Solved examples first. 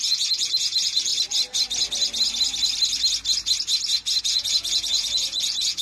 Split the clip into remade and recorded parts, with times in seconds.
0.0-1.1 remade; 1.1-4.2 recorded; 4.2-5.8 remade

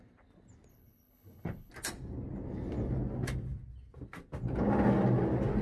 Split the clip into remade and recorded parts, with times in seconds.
0.0-0.7 recorded; 0.7-1.7 remade; 1.7-5.6 recorded

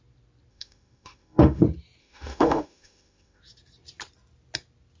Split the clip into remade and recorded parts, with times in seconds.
0.0-0.5 recorded; 0.5-1.6 remade; 1.6-2.0 recorded; 2.0-3.4 remade; 3.4-5.0 recorded